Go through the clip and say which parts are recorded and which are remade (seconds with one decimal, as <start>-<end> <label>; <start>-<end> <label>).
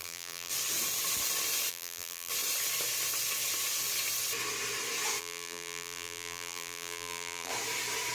0.0-0.5 remade; 0.5-1.7 recorded; 1.7-2.3 remade; 2.3-5.2 recorded; 5.2-7.5 remade; 7.5-8.1 recorded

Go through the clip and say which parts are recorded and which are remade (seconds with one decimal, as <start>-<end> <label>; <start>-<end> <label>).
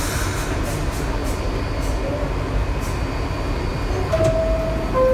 0.0-5.1 recorded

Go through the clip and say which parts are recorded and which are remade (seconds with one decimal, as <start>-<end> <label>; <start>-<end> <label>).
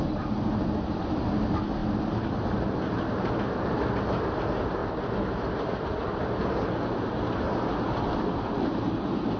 0.0-9.4 recorded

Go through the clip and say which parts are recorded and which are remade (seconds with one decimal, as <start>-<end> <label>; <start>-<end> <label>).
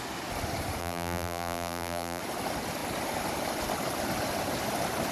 0.0-0.8 recorded; 0.8-2.2 remade; 2.2-5.1 recorded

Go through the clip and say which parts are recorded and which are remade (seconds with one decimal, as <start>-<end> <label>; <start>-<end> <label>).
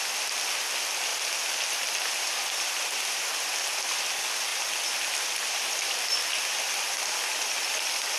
0.0-8.2 recorded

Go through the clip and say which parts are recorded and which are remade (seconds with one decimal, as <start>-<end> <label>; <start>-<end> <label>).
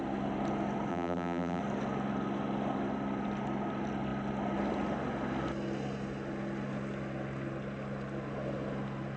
0.0-0.9 recorded; 0.9-1.6 remade; 1.6-9.2 recorded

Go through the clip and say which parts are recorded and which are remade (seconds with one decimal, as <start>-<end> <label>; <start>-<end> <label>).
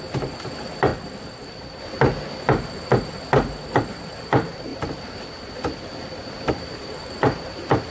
0.0-0.9 recorded; 0.9-1.8 remade; 1.8-4.7 recorded; 4.7-7.5 remade; 7.5-7.9 recorded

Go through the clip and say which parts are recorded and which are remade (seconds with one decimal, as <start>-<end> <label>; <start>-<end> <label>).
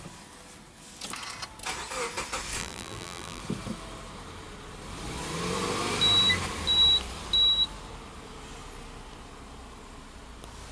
0.0-2.6 recorded; 2.6-3.4 remade; 3.4-10.7 recorded